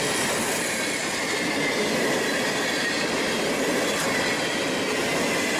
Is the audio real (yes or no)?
yes